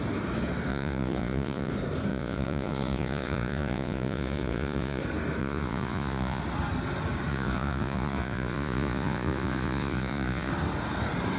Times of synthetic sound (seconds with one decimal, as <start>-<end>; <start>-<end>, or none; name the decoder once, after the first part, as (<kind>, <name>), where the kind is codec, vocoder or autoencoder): 0.7-1.7 (vocoder, Vocos); 2.1-5.0; 5.4-6.4; 7.3-10.5